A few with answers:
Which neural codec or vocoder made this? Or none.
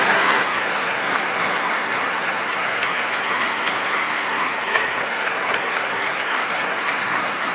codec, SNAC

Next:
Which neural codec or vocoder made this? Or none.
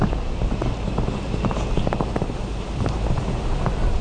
none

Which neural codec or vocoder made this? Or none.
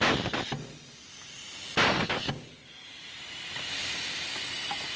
none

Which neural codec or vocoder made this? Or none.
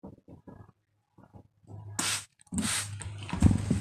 none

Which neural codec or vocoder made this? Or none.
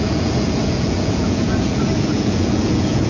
vocoder, Vocos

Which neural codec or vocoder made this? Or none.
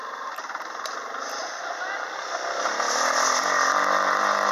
none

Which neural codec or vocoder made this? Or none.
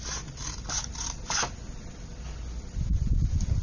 none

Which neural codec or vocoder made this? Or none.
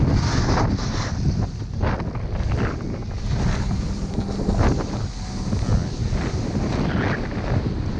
none